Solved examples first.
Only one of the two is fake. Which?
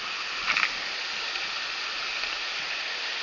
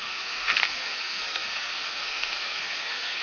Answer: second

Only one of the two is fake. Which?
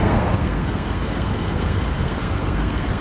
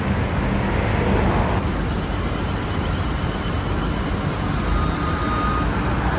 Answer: first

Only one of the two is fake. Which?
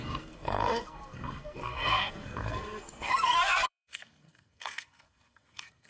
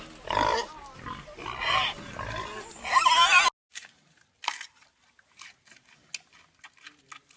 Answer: first